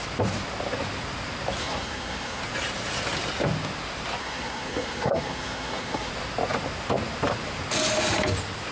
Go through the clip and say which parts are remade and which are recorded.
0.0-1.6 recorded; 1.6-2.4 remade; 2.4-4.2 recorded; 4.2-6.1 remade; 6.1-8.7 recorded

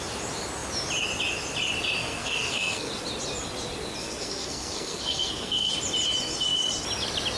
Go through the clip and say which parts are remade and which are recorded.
0.0-2.0 recorded; 2.0-2.9 remade; 2.9-4.0 recorded; 4.0-5.7 remade; 5.7-7.4 recorded